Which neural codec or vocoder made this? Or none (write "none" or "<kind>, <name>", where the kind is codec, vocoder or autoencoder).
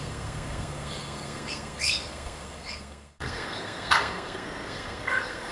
codec, SNAC